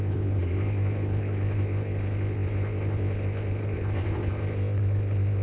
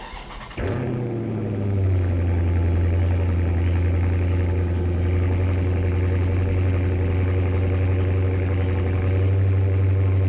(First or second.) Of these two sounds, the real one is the second